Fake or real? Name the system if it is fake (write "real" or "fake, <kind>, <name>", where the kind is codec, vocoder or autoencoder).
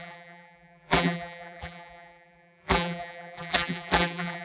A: fake, vocoder, BigVGAN v2